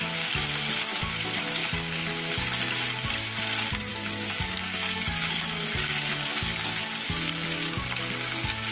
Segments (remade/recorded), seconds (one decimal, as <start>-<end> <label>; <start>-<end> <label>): 0.0-3.9 recorded; 3.9-7.8 remade; 7.8-8.7 recorded